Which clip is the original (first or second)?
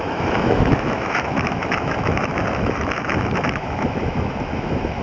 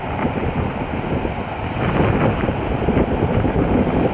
second